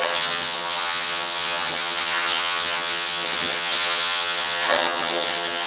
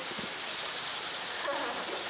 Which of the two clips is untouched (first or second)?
second